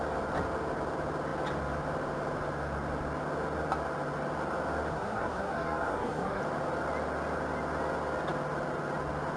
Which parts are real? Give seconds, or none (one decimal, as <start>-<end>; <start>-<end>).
0.0-4.9; 6.4-9.4